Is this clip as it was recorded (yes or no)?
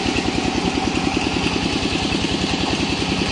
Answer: yes